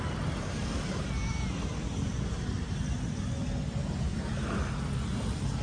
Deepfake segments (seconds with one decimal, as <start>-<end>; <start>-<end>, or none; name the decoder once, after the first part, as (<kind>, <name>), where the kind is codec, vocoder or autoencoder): none